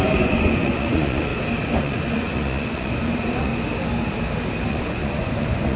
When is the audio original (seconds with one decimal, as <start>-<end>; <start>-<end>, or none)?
1.3-1.8; 3.5-4.7